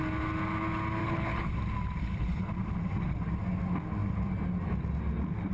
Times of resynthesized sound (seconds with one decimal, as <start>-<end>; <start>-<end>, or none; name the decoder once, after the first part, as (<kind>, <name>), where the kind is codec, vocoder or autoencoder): 1.0-1.5 (codec, HILCodec); 2.0-2.5